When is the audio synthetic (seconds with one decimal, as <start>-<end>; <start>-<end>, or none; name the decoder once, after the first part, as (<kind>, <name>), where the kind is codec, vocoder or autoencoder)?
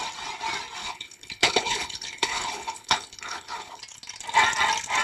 0.8-3.8 (codec, HILCodec)